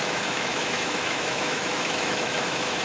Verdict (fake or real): fake